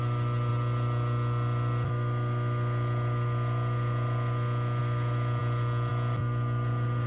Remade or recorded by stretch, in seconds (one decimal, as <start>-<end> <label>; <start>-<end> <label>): 0.0-7.1 recorded